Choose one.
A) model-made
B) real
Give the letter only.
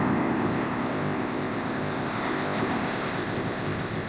A